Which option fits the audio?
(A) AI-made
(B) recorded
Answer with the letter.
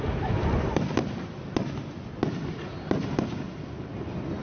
B